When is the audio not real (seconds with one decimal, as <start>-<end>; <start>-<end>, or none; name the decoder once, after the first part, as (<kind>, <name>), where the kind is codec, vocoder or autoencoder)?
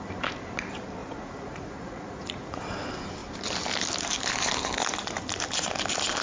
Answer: 1.0-2.6 (vocoder, Vocos)